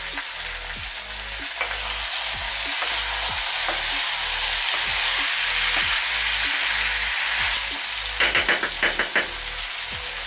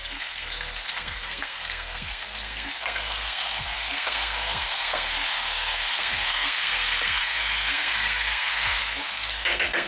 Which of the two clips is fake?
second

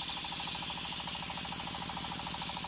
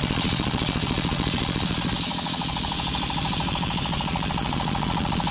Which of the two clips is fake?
second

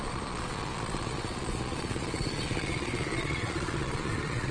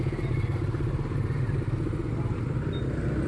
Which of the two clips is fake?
first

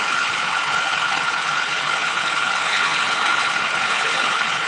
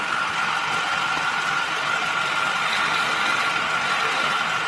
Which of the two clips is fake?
first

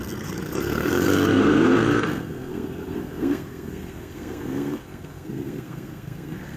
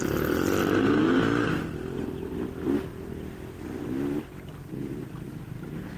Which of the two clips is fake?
first